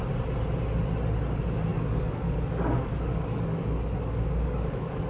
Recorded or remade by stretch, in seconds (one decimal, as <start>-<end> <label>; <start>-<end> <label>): 0.0-1.7 recorded; 1.7-5.1 remade